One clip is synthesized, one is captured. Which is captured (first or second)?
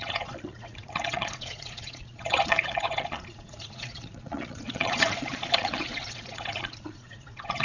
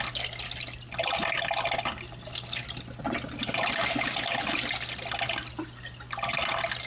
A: second